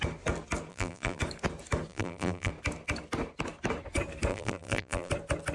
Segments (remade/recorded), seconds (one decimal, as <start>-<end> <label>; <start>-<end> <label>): 0.0-0.7 recorded; 0.7-1.2 remade; 1.2-1.9 recorded; 1.9-2.5 remade; 2.5-4.3 recorded; 4.3-5.1 remade; 5.1-5.5 recorded